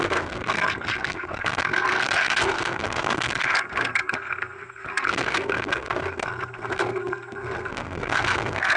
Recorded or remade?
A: remade